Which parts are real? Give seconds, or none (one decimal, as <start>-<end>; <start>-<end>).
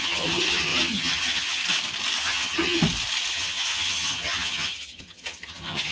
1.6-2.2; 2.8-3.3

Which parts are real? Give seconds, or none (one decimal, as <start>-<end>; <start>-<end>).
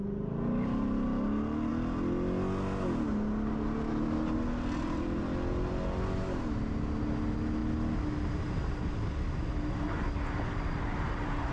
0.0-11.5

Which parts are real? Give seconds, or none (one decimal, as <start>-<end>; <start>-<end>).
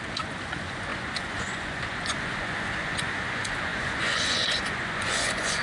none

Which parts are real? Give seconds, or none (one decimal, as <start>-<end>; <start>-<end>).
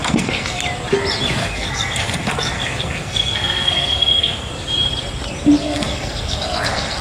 0.6-1.4; 4.5-5.6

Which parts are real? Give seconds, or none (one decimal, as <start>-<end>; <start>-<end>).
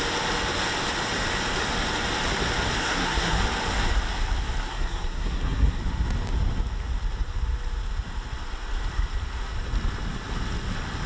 0.0-2.8; 3.4-4.7; 5.8-11.1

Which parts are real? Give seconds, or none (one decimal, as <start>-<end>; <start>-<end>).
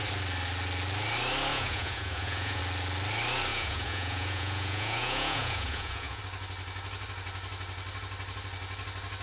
0.0-1.5; 2.6-3.5; 6.2-9.2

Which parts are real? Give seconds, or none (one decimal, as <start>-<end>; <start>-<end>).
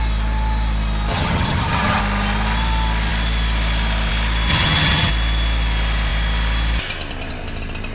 0.0-1.1; 2.0-4.5; 5.1-7.9